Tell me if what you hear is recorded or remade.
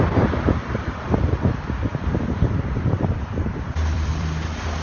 remade